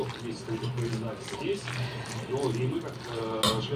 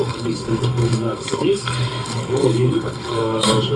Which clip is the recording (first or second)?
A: first